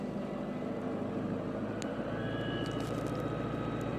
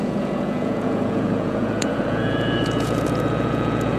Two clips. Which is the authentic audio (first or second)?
first